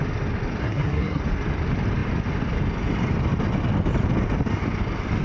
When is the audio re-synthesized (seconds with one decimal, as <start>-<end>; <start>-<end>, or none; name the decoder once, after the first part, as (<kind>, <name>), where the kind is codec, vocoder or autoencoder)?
0.6-1.2 (codec, SNAC)